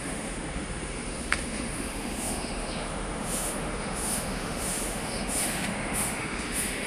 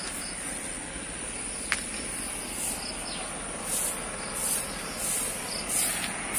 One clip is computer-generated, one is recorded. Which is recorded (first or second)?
second